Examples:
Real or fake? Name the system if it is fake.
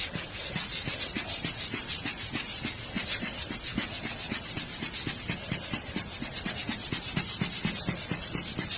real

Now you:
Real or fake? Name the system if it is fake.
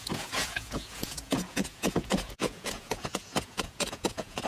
fake, vocoder, Vocos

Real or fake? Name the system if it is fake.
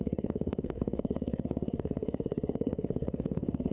fake, codec, SNAC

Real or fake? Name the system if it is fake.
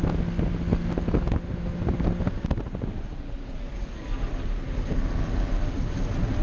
real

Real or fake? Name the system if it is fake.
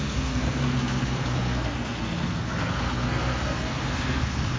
fake, codec, SNAC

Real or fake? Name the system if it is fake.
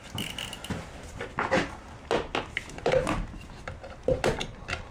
real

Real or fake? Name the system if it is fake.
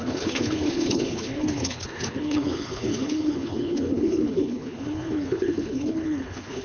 fake, codec, HILCodec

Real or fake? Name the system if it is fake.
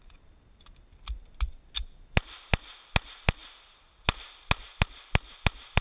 real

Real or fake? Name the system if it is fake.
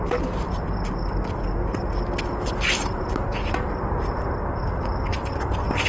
real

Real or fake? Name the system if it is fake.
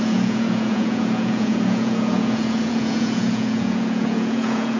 fake, vocoder, Vocos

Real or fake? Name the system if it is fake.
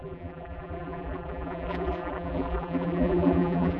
fake, vocoder, BigVGAN v2